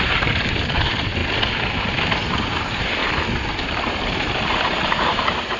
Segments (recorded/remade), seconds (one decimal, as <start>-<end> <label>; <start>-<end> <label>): 0.0-1.2 remade; 1.2-2.6 recorded; 2.6-3.0 remade; 3.0-3.5 recorded; 3.5-5.6 remade